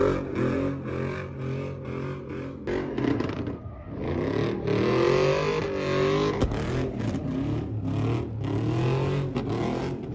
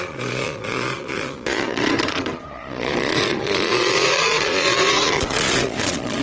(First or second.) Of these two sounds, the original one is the first